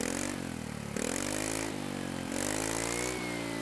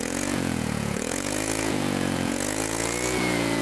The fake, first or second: second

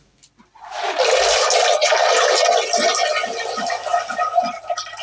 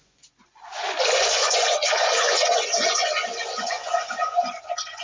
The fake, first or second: second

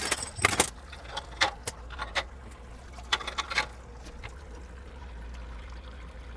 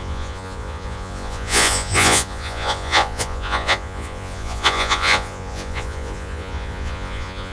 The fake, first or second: second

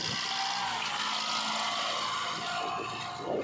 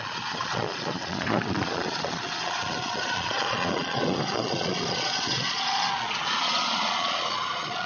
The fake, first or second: second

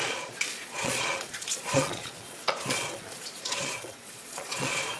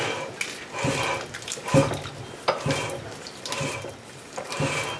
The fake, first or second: first